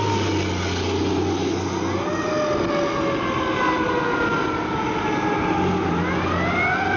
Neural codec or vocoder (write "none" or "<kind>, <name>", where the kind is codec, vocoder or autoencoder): none